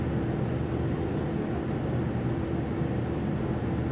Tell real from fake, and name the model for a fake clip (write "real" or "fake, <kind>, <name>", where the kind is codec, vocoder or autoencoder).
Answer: real